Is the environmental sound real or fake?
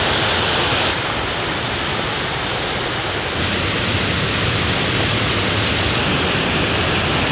real